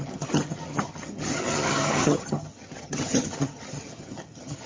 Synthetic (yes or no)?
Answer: yes